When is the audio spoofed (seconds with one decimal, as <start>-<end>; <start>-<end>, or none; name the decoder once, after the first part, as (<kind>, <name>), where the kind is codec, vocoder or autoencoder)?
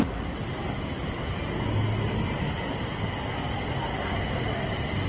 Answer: none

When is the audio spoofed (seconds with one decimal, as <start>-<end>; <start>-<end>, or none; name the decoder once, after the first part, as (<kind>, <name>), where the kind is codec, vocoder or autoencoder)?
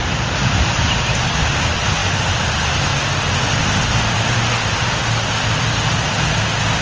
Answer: 2.0-2.5 (vocoder, BigVGAN v2); 2.9-6.8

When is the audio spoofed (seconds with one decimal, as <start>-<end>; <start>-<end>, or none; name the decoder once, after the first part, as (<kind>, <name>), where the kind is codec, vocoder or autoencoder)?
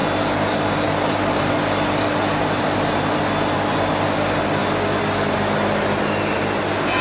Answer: none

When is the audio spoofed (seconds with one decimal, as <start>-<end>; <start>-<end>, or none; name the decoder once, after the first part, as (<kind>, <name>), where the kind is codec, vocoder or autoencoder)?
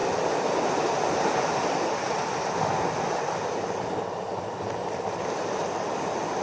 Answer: 4.3-5.0 (vocoder, BigVGAN v2)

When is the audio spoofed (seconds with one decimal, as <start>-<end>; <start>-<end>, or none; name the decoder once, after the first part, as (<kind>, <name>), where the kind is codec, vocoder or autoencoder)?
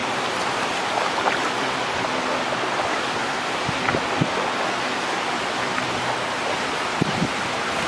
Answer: 0.0-4.7 (vocoder, BigVGAN v2)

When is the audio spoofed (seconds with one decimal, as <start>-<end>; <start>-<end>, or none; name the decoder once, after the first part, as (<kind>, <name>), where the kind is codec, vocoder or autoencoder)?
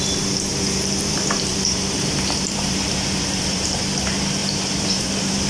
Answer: 0.5-3.8 (vocoder, BigVGAN v2); 4.4-5.5